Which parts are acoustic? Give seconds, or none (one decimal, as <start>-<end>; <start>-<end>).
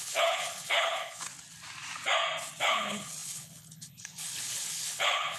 1.3-2.6